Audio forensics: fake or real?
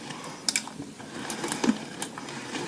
real